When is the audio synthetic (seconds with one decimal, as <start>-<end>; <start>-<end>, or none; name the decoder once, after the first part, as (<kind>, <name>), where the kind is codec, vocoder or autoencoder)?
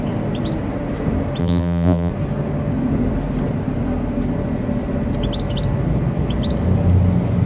1.4-2.1 (vocoder, BigVGAN v2)